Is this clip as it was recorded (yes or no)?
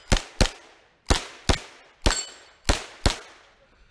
yes